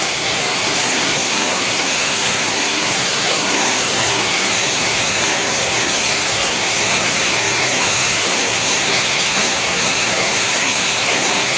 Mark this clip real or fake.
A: fake